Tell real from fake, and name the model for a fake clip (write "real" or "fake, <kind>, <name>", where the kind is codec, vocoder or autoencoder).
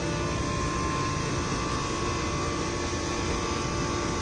real